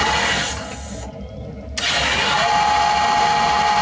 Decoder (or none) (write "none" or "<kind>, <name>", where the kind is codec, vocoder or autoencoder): none